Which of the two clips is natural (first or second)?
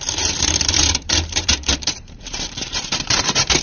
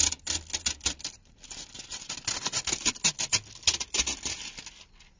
second